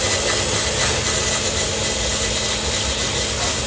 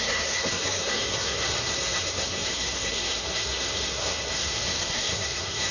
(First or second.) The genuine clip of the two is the first